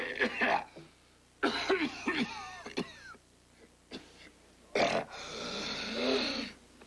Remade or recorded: recorded